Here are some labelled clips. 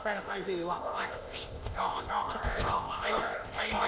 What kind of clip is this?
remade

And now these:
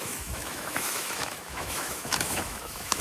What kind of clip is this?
remade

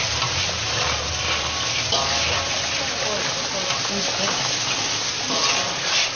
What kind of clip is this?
recorded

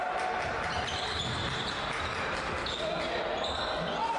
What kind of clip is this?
recorded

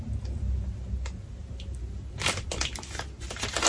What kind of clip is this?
recorded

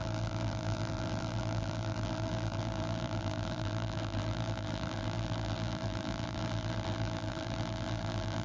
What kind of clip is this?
remade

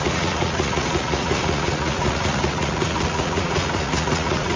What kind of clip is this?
remade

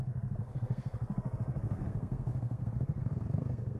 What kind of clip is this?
remade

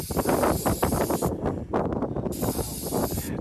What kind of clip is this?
recorded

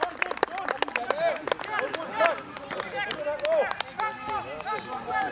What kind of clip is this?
recorded